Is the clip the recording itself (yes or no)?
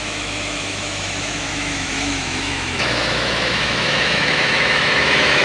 no